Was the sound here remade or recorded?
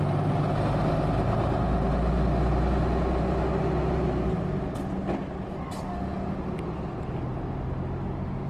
recorded